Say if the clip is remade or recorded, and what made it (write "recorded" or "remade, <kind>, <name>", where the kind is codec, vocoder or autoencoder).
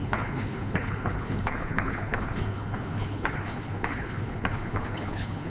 remade, codec, HILCodec